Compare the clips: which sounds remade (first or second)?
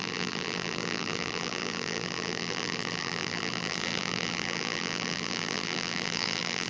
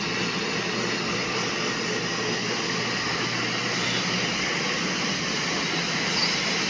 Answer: first